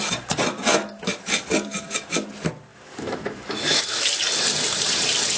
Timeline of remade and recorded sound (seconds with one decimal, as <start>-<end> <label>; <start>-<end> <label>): 0.0-0.7 recorded; 0.7-1.2 remade; 1.2-2.7 recorded; 2.7-4.1 remade; 4.1-5.4 recorded